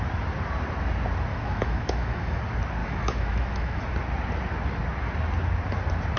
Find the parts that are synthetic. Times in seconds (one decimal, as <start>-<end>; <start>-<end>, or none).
1.3-2.4; 2.8-3.8